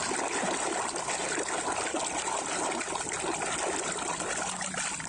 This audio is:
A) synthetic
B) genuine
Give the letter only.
B